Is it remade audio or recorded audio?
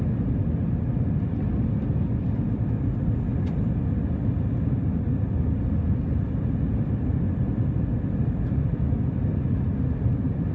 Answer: recorded